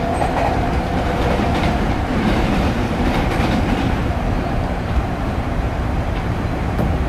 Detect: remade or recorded remade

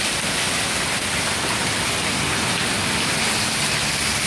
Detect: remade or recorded recorded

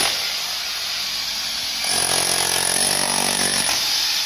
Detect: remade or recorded recorded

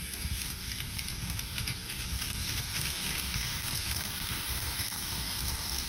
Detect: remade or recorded remade